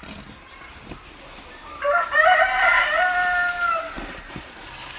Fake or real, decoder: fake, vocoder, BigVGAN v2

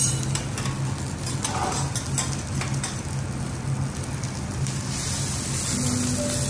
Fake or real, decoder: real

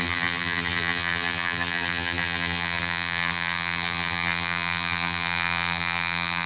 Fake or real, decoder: fake, vocoder, BigVGAN v2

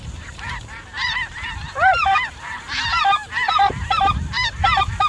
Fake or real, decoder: fake, vocoder, BigVGAN v2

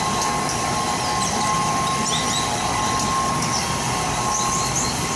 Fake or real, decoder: real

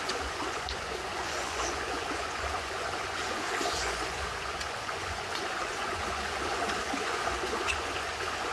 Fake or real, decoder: fake, vocoder, Vocos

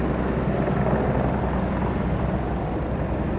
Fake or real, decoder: real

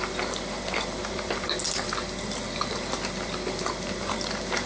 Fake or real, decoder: real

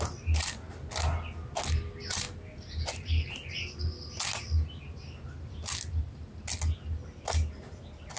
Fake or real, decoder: real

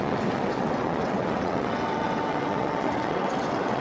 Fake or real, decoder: fake, vocoder, WaveNeXt